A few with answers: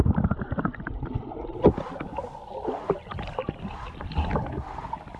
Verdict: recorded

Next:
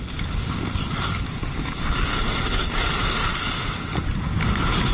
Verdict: recorded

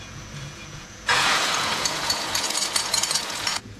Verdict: remade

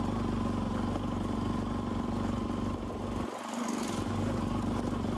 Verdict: recorded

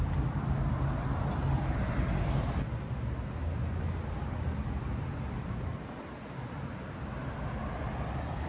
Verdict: recorded